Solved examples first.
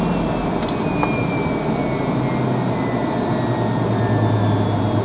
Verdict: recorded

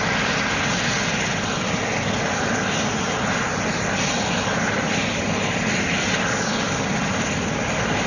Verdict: recorded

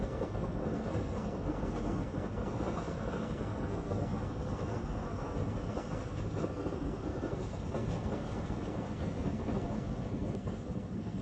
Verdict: remade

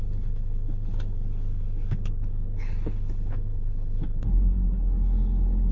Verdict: remade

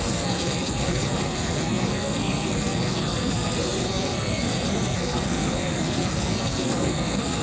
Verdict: remade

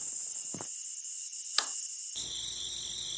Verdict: recorded